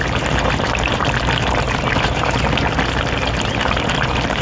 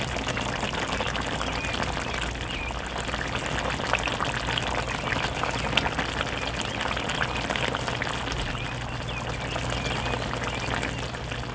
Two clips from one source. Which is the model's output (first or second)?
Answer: first